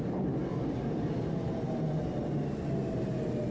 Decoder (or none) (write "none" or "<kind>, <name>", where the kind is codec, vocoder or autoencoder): none